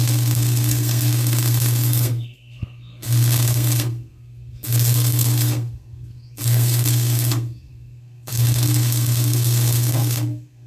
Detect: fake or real fake